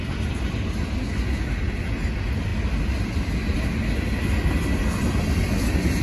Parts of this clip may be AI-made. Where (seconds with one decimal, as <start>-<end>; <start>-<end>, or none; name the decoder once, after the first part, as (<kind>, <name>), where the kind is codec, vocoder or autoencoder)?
none

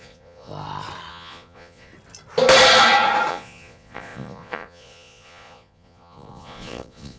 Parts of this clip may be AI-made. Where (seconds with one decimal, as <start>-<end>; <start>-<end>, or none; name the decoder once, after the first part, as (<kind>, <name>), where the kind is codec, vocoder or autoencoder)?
0.0-0.5 (vocoder, Vocos); 1.1-1.9; 3.3-7.2

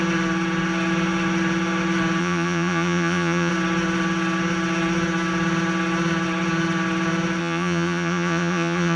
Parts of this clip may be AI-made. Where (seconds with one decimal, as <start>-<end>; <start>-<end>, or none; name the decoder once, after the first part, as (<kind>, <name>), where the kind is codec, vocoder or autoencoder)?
2.2-3.5 (vocoder, Vocos); 7.4-9.0